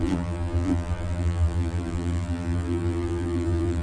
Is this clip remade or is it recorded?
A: remade